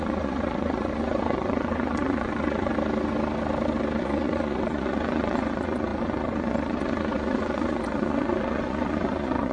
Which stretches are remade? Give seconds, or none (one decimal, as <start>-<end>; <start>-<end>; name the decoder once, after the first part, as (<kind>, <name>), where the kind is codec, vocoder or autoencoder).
0.0-2.7 (vocoder, Vocos); 4.0-9.5